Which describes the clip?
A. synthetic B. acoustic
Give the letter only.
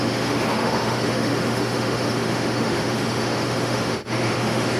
A